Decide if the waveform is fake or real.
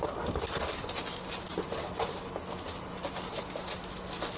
real